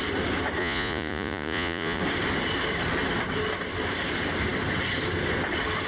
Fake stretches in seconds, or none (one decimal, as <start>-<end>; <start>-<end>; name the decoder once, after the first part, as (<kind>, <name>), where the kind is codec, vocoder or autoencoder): 0.6-2.0 (vocoder, Vocos)